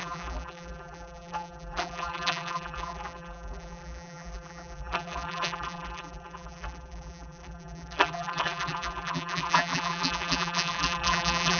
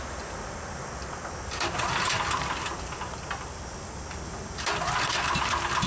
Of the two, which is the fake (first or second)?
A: first